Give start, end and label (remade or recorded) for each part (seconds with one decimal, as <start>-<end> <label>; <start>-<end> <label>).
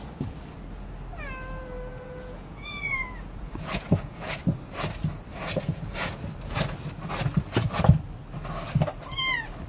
0.0-1.9 recorded; 1.9-4.4 remade; 4.4-5.3 recorded; 5.3-6.2 remade; 6.2-9.7 recorded